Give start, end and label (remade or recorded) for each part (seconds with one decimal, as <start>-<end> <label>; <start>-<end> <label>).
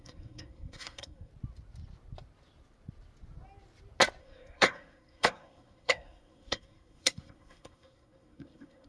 0.0-1.3 remade; 1.3-4.2 recorded; 4.2-8.9 remade